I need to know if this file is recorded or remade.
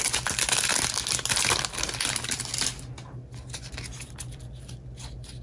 recorded